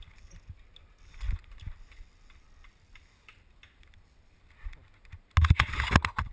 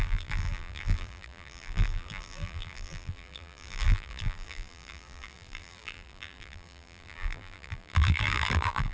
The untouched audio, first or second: first